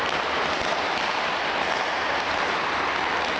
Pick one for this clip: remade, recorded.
recorded